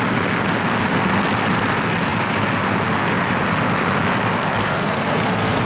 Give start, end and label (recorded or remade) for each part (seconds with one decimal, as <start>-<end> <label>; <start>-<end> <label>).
0.0-4.6 recorded; 4.6-5.6 remade